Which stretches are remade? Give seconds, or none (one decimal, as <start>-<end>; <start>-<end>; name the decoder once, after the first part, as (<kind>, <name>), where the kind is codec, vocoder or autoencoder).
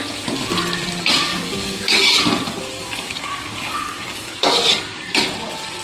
1.3-2.2 (codec, DAC); 2.8-4.7